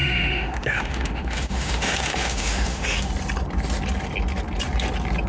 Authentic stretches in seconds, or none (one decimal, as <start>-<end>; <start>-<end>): 3.1-5.3